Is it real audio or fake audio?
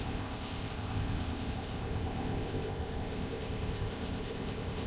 fake